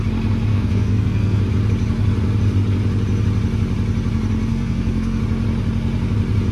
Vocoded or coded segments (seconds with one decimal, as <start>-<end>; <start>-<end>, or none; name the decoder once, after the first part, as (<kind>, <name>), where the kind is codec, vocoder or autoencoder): 0.5-1.4 (codec, SNAC); 4.5-5.2